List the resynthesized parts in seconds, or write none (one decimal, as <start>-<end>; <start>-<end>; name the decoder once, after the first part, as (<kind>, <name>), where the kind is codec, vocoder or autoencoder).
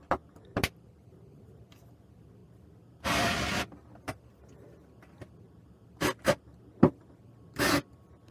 none